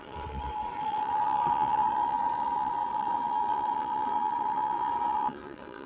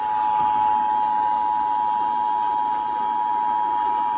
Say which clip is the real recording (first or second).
second